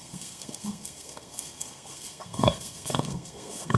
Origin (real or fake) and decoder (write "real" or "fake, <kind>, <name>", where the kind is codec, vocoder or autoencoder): fake, codec, SNAC